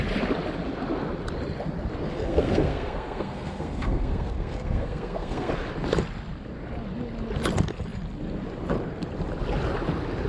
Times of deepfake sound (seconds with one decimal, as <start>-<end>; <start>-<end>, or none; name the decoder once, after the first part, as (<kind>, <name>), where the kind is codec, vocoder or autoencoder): 2.1-5.5 (codec, SNAC)